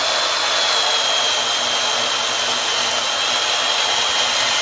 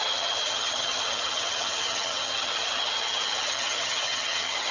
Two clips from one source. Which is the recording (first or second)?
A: first